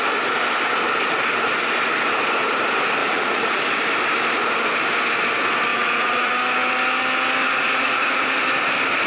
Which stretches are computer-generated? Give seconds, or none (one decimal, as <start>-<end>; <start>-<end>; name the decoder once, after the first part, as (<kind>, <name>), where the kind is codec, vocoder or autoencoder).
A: 3.0-3.6 (vocoder, Vocos); 5.7-6.3; 7.4-8.4